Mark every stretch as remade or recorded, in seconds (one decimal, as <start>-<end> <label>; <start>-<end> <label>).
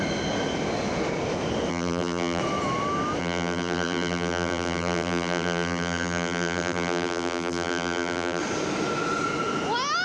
0.0-1.7 recorded; 1.7-2.4 remade; 2.4-3.2 recorded; 3.2-8.4 remade; 8.4-10.0 recorded